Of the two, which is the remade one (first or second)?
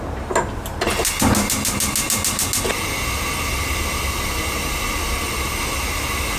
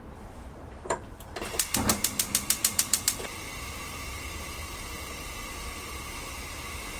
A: second